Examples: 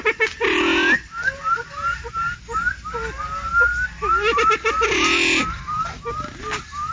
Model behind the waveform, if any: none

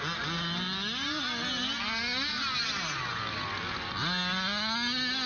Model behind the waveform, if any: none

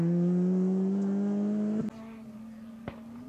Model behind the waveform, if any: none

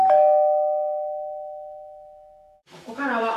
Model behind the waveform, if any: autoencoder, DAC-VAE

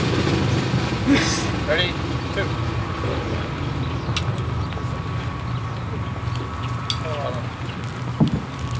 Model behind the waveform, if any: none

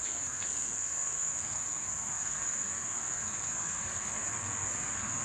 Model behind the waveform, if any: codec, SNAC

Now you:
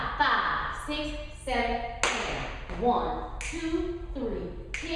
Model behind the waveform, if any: none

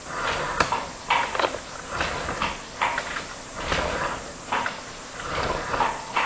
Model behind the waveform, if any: none